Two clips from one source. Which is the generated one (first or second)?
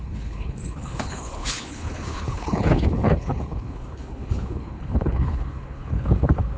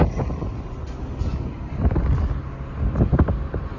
first